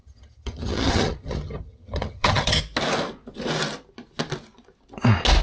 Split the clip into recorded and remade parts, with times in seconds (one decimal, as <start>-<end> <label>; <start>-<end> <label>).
0.0-2.6 remade; 2.6-5.4 recorded